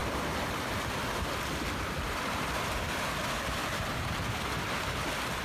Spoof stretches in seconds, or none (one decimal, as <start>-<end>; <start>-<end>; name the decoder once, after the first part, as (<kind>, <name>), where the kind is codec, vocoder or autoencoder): 0.0-3.2 (vocoder, BigVGAN v2); 3.6-4.6